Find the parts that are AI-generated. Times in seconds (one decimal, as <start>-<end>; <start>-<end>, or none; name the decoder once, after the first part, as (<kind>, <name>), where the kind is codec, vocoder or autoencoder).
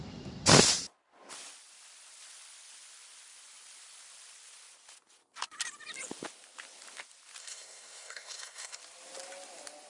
7.4-8.8 (codec, SNAC)